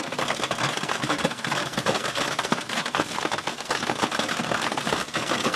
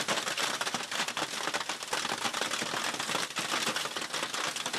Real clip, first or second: second